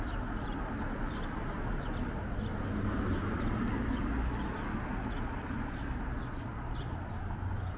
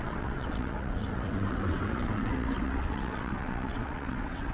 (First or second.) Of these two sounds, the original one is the first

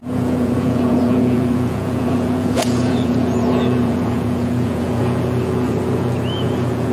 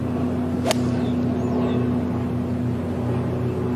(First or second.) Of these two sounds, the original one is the second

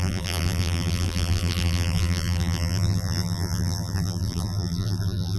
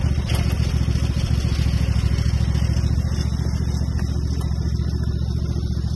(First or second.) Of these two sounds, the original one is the second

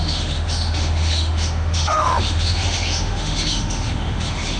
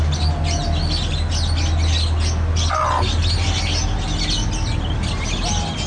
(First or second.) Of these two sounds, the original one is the second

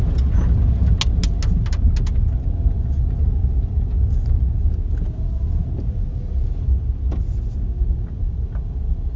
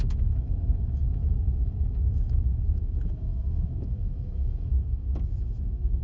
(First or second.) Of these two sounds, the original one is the first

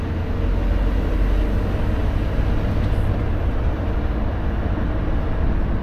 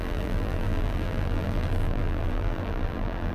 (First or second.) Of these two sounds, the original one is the first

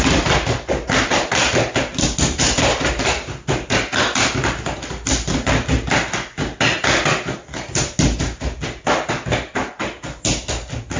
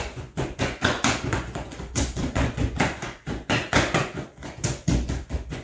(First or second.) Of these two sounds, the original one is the first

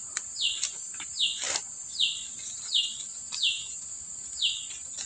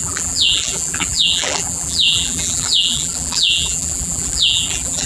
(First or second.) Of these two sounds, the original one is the first